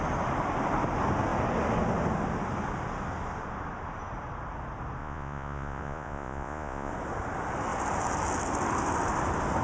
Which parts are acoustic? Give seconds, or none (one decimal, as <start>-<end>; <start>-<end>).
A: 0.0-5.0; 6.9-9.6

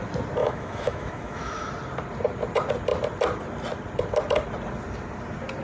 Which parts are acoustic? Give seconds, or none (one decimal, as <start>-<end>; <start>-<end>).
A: 0.0-0.4; 1.7-5.6

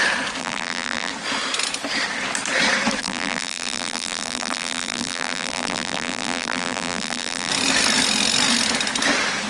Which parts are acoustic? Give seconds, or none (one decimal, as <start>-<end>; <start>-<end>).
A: 0.0-0.4; 1.1-3.0; 7.5-9.5